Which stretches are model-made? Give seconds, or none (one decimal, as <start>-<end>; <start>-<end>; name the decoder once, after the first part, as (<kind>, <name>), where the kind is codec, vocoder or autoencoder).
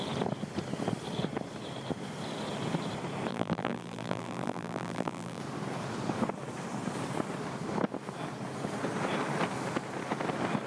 3.3-5.4 (vocoder, BigVGAN v2)